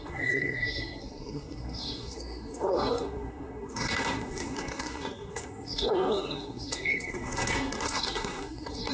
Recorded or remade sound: remade